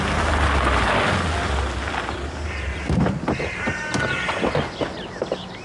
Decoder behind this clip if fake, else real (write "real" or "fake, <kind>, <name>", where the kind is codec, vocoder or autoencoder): real